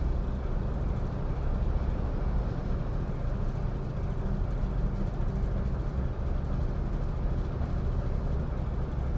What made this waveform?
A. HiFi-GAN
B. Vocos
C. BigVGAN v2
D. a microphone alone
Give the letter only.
D